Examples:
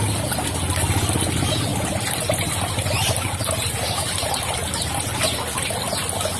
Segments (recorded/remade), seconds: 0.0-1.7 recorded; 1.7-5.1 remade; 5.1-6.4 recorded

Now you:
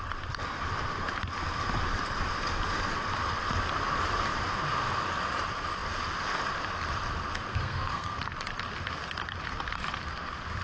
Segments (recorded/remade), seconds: 0.0-7.5 recorded; 7.5-8.2 remade; 8.2-10.6 recorded

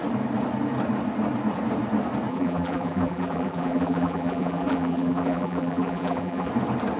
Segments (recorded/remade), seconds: 0.0-2.3 recorded; 2.3-6.5 remade; 6.5-7.0 recorded

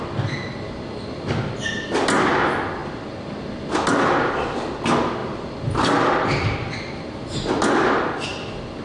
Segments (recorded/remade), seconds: 0.0-8.8 recorded

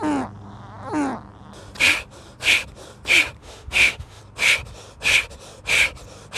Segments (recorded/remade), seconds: 0.0-3.4 recorded; 3.4-4.2 remade; 4.2-6.4 recorded

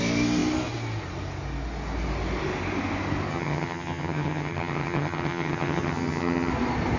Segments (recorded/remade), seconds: 0.0-3.3 recorded; 3.3-6.5 remade; 6.5-7.0 recorded

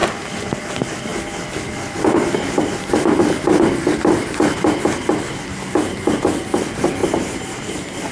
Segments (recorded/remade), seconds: 0.0-7.0 recorded; 7.0-7.5 remade; 7.5-8.1 recorded

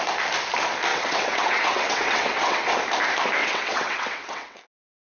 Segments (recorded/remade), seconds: 0.0-0.9 recorded; 0.9-2.8 remade; 2.8-3.4 recorded; 3.4-4.6 remade; 4.6-5.2 recorded